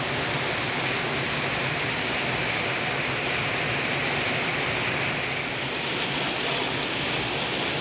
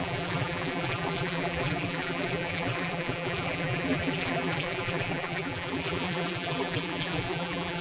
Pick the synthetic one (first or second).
second